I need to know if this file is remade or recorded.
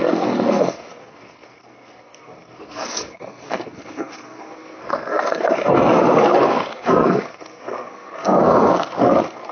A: remade